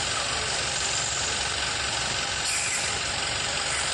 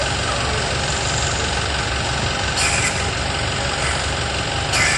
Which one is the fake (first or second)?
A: first